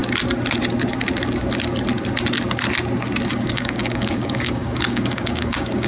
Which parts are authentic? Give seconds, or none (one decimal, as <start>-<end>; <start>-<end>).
0.0-3.3